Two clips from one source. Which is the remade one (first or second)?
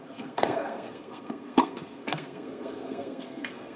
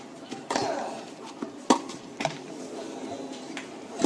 first